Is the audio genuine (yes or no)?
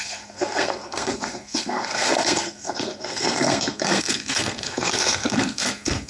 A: no